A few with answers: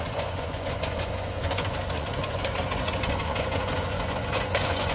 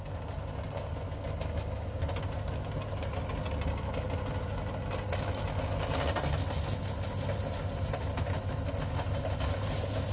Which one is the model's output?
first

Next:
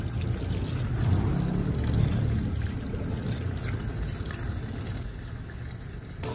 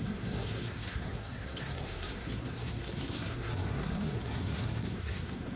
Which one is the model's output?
second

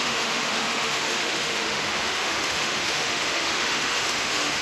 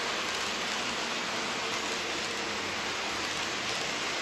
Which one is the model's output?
first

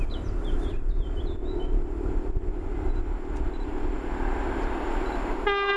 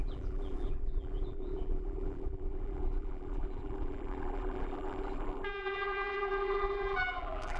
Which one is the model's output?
second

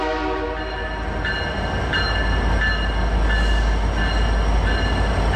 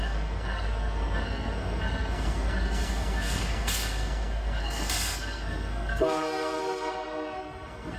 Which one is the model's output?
second